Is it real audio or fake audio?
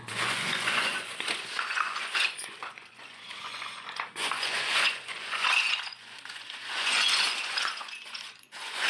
fake